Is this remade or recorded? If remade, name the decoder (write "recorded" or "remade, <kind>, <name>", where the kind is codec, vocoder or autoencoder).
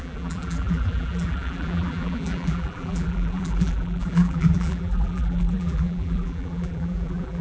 remade, vocoder, BigVGAN v2